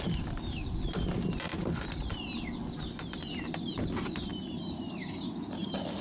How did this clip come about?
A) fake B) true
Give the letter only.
A